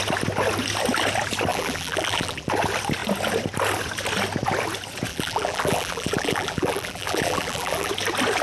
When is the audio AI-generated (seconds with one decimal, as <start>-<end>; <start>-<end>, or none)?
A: 1.5-2.5; 5.1-7.9